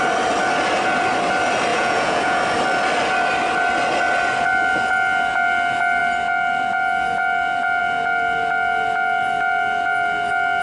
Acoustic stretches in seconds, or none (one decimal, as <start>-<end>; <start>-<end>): 0.0-1.7; 2.4-10.6